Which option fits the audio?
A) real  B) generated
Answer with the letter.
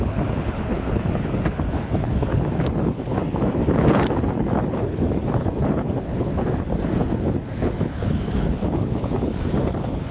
B